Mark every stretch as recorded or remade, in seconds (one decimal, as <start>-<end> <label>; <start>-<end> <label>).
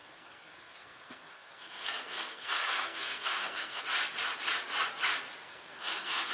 0.0-3.8 remade; 3.8-5.4 recorded; 5.4-6.3 remade